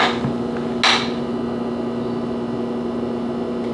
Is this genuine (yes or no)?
yes